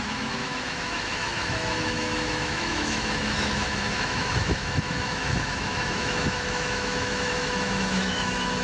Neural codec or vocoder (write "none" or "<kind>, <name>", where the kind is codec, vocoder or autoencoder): autoencoder, DAC-VAE